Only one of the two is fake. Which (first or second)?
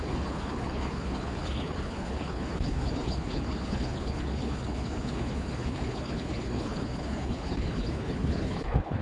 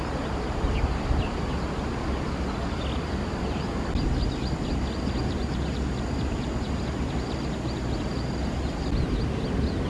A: first